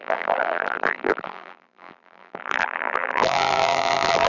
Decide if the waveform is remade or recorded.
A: remade